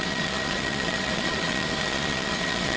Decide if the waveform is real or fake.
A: fake